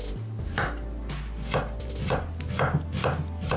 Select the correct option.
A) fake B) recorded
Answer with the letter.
B